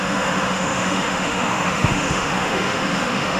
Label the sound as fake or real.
fake